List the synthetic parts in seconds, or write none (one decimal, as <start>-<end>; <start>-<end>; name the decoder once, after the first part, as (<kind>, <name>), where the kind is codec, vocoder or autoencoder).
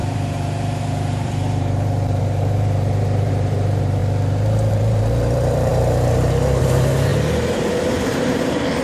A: 0.0-4.0 (vocoder, BigVGAN v2); 4.7-7.1; 7.9-8.8